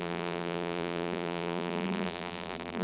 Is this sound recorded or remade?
remade